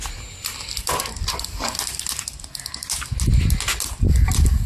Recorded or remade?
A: recorded